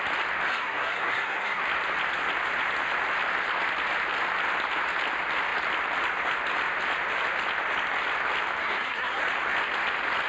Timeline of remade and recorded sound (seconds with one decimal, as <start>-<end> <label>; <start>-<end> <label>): 0.0-0.5 recorded; 0.5-1.6 remade; 1.6-8.6 recorded; 8.6-9.2 remade; 9.2-10.3 recorded